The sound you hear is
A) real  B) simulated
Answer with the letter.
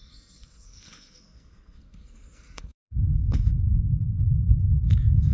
B